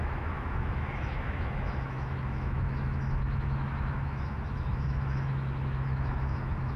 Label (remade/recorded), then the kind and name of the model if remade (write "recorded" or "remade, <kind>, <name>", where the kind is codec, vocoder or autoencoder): remade, autoencoder, DAC-VAE